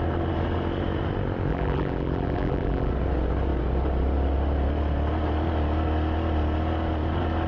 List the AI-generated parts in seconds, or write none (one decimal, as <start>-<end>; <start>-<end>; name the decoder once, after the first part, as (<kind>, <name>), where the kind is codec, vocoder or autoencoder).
1.5-2.9 (vocoder, BigVGAN v2)